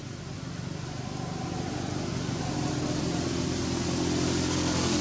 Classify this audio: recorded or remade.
recorded